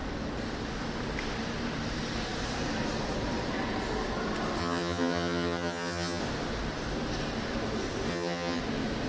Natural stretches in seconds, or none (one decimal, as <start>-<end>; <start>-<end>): 0.0-4.6; 6.2-8.1; 8.6-9.1